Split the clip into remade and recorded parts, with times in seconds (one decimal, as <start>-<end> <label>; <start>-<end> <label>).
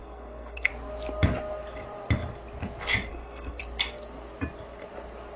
0.0-0.7 remade; 0.7-3.1 recorded; 3.1-3.6 remade; 3.6-5.4 recorded